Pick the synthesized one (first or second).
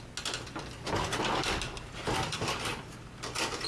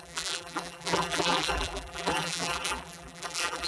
second